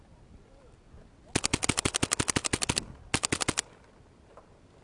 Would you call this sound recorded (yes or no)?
yes